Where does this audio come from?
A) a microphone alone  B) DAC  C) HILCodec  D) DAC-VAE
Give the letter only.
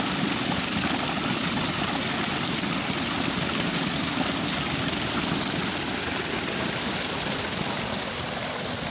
A